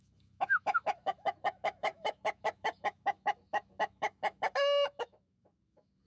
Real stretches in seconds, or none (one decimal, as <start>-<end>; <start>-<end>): none